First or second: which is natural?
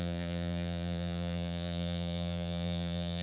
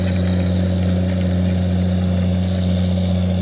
second